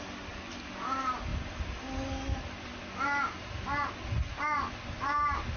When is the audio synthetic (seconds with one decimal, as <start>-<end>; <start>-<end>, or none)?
none

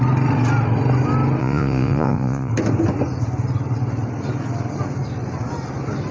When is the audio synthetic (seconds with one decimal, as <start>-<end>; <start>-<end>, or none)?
1.4-2.5

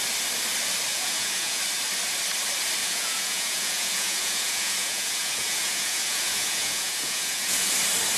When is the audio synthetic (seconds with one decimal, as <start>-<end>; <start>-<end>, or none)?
0.9-1.6; 2.8-7.7